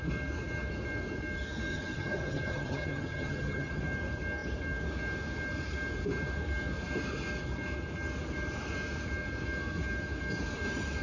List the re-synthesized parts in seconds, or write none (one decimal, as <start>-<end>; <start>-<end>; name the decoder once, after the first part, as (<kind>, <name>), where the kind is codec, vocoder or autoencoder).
1.7-3.8 (vocoder, HiFi-GAN)